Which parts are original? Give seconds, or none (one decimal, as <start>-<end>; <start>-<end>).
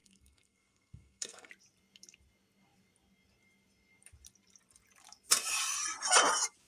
1.5-6.7